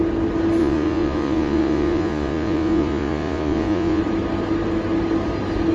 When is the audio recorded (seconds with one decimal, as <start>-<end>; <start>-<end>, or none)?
0.0-0.6; 4.0-5.7